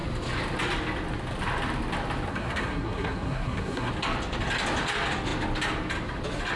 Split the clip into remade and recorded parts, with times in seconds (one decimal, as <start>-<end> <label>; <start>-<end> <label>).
0.0-2.3 recorded; 2.3-3.9 remade; 3.9-6.6 recorded